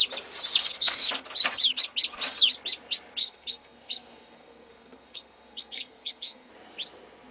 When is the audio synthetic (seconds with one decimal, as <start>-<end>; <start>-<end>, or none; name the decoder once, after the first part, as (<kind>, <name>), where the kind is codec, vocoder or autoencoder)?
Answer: 0.6-1.1 (codec, SNAC); 3.2-6.5